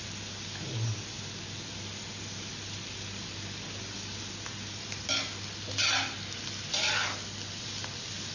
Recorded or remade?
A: recorded